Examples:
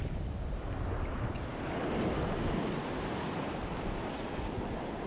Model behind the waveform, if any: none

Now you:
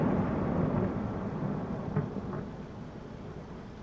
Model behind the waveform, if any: none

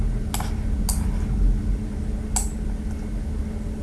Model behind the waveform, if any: none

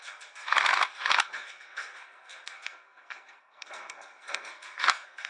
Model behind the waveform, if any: codec, SNAC